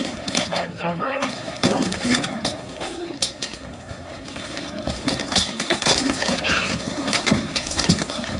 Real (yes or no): no